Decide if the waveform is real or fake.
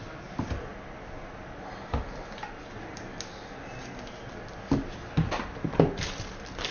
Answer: real